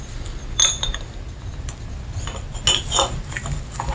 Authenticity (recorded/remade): recorded